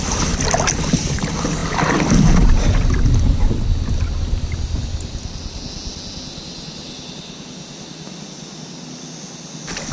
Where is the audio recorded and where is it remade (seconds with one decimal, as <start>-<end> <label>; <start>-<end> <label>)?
0.0-9.9 recorded